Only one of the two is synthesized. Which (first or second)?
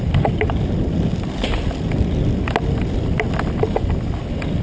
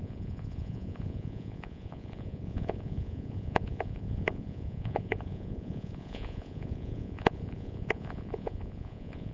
second